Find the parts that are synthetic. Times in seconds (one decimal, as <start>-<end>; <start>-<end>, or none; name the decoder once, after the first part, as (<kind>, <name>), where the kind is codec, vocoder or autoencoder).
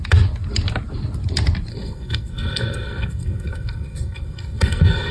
1.7-5.1 (codec, SNAC)